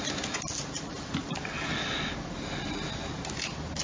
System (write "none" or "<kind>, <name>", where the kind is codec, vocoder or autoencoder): none